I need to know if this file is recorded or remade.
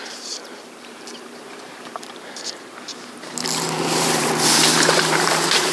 remade